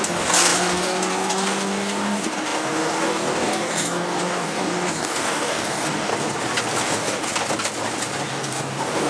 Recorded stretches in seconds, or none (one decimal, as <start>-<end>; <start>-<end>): 6.1-6.8; 7.3-8.3